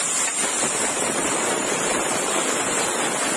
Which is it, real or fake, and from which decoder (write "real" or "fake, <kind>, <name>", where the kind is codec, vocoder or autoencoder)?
real